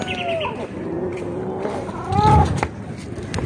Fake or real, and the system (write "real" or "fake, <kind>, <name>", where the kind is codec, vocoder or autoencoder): real